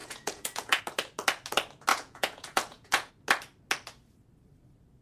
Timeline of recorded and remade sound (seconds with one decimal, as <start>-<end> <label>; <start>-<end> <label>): 0.0-0.8 remade; 0.8-1.9 recorded; 1.9-3.1 remade; 3.1-5.0 recorded